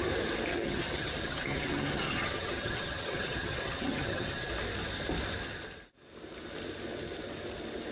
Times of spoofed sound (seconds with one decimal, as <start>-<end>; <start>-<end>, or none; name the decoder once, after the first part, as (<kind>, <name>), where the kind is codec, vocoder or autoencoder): 0.5-4.5 (vocoder, HiFi-GAN)